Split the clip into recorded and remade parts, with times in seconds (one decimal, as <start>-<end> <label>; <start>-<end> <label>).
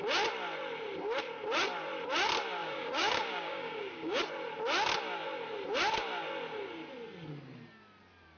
0.0-2.6 recorded; 2.6-4.2 remade; 4.2-8.4 recorded